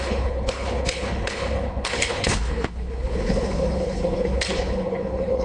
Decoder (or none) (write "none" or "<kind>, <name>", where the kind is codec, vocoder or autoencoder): codec, HILCodec